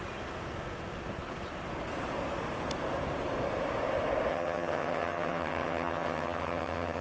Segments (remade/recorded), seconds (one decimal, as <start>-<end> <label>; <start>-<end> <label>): 0.0-4.3 recorded; 4.3-7.0 remade

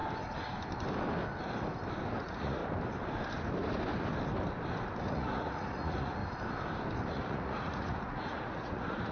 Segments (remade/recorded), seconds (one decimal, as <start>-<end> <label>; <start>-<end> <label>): 0.0-2.2 recorded; 2.2-2.6 remade; 2.6-5.0 recorded; 5.0-6.2 remade; 6.2-7.1 recorded; 7.1-9.1 remade

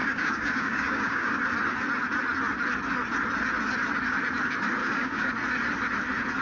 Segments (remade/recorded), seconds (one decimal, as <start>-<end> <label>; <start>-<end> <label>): 0.0-1.3 remade; 1.3-4.8 recorded; 4.8-5.3 remade; 5.3-6.4 recorded

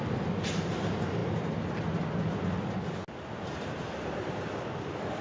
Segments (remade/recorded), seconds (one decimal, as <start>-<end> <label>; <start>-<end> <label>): 0.0-5.2 recorded

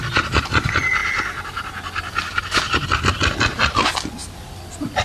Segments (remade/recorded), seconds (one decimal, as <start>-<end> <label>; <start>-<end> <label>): 0.0-1.0 recorded; 1.0-3.0 remade; 3.0-5.0 recorded

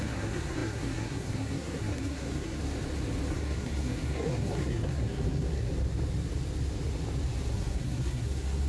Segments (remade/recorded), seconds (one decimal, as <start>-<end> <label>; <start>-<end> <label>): 0.0-2.6 remade; 2.6-3.3 recorded; 3.3-5.7 remade; 5.7-7.5 recorded; 7.5-8.7 remade

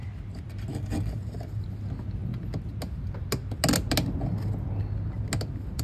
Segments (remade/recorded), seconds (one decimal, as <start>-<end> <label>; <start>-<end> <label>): 0.0-0.7 recorded; 0.7-1.2 remade; 1.2-5.8 recorded